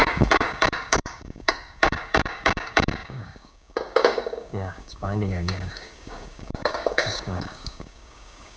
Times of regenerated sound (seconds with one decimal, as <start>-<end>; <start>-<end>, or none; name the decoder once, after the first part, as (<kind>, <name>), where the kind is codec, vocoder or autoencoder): 0.0-8.6 (codec, DAC)